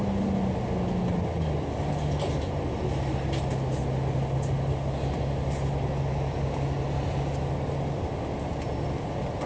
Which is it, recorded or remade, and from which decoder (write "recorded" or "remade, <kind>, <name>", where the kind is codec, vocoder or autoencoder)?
recorded